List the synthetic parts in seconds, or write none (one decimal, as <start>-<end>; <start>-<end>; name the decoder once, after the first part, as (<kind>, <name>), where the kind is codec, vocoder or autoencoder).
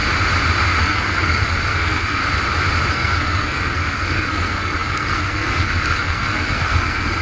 0.8-2.2 (codec, SNAC); 2.9-7.2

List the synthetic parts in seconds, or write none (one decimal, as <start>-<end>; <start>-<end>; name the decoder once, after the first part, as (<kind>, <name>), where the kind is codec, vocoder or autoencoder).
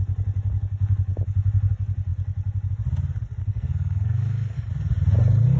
3.4-4.7 (codec, SNAC)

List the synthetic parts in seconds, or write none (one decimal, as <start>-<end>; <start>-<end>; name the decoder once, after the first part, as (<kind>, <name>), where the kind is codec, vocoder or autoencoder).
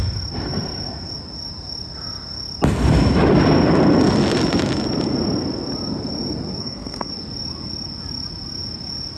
6.6-7.1 (codec, SNAC)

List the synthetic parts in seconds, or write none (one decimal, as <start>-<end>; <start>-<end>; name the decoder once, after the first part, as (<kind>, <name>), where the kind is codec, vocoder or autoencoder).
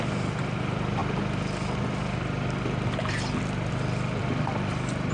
none